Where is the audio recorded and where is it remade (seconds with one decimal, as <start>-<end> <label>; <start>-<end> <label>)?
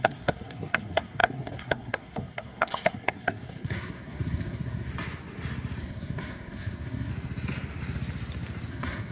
0.0-4.9 remade; 4.9-5.8 recorded; 5.8-7.1 remade; 7.1-8.7 recorded; 8.7-9.1 remade